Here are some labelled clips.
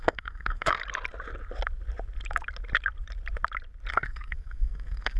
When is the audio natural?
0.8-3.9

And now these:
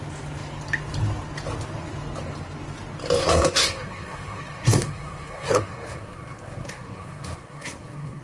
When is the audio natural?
0.0-3.2